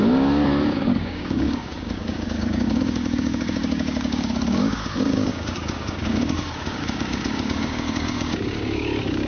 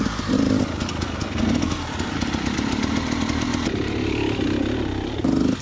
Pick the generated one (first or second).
first